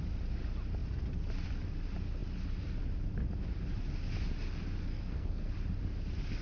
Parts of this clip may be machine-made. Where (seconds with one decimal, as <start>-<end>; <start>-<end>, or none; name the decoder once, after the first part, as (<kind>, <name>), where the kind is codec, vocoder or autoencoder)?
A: 4.9-5.5 (codec, SNAC)